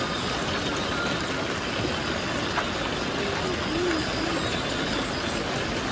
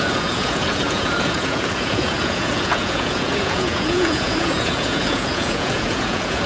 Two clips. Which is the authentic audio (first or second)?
first